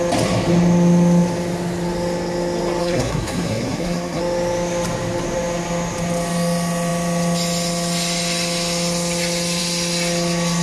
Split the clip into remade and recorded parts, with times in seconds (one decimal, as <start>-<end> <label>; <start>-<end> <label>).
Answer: 0.0-2.8 recorded; 2.8-4.2 remade; 4.2-10.6 recorded